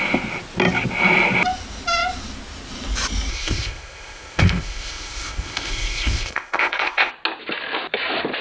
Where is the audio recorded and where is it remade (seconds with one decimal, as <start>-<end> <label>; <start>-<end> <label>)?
0.0-3.3 recorded; 3.3-7.1 remade; 7.1-8.4 recorded